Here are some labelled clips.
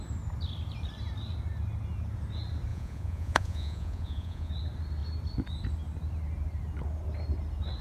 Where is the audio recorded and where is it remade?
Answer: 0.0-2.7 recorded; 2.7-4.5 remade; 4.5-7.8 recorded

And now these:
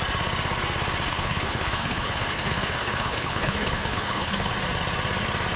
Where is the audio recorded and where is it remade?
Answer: 0.0-1.1 recorded; 1.1-4.5 remade; 4.5-5.6 recorded

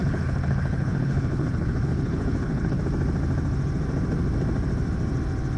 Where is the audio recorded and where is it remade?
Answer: 0.0-2.8 remade; 2.8-5.6 recorded